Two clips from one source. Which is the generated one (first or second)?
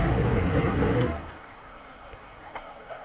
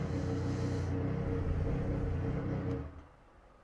first